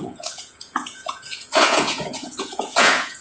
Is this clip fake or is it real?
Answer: fake